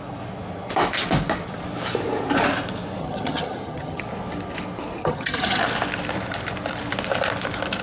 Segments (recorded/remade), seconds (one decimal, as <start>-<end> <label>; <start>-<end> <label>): 0.0-3.0 recorded; 3.0-4.0 remade; 4.0-5.0 recorded; 5.0-5.6 remade; 5.6-7.8 recorded